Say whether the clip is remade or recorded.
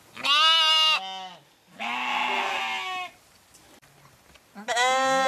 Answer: recorded